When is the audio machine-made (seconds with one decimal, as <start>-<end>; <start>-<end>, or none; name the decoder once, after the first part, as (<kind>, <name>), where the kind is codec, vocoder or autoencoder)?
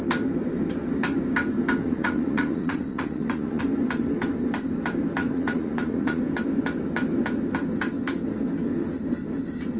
1.8-3.6 (vocoder, Vocos); 5.2-6.2